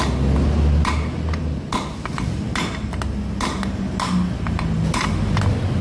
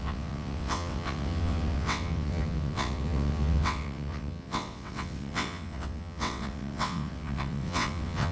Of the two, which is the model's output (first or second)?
second